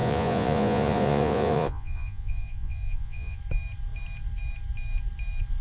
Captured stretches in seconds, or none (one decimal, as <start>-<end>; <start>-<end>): 3.4-5.6